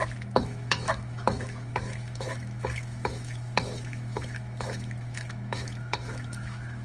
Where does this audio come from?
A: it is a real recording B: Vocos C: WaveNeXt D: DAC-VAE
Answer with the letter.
D